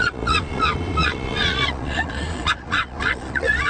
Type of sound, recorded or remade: remade